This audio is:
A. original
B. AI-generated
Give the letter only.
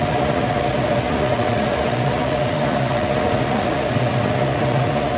B